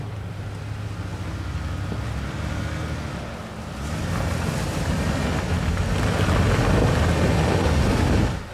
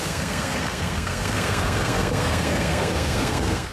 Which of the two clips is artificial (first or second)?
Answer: second